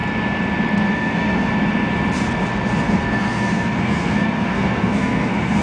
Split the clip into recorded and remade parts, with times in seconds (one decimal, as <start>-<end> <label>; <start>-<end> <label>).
0.0-0.9 recorded; 0.9-1.5 remade; 1.5-2.8 recorded; 2.8-5.6 remade